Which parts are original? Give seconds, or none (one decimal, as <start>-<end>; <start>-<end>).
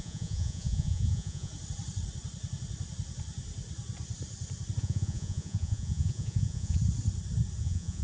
1.5-4.8; 6.8-7.6